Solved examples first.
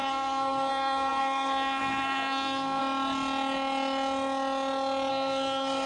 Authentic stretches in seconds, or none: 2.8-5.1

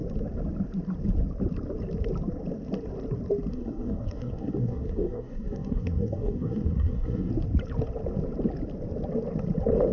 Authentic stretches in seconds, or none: 0.0-3.5; 7.3-9.9

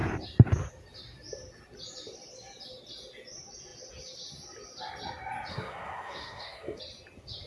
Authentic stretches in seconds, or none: 0.0-5.5; 6.8-7.5

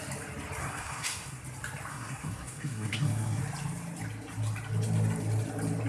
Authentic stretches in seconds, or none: 0.0-0.6; 1.4-1.9; 3.4-5.9

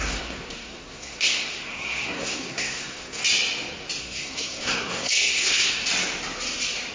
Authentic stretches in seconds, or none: 3.2-4.0; 5.8-6.9

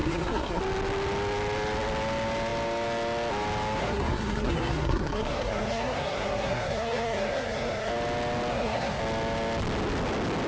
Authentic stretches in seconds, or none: 0.6-3.8; 7.9-8.5; 9.0-10.5

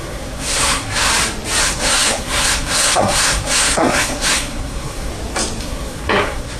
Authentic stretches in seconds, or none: 1.1-1.6; 5.1-5.6